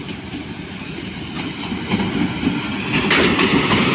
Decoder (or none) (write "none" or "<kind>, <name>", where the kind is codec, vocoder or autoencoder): none